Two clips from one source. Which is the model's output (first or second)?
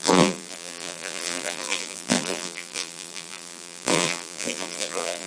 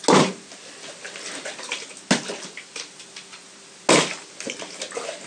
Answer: first